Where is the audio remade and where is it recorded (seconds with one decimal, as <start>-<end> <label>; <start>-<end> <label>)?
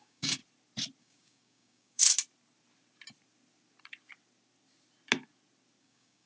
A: 0.0-0.4 remade; 0.4-1.0 recorded; 1.0-2.0 remade; 2.0-5.8 recorded; 5.8-6.3 remade